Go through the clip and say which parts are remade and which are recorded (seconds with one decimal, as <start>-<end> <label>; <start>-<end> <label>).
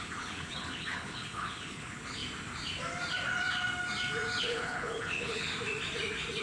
0.0-2.2 remade; 2.2-4.4 recorded; 4.4-5.5 remade; 5.5-6.4 recorded